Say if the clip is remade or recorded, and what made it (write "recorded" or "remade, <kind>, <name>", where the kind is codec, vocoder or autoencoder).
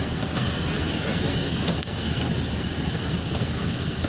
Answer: remade, codec, SNAC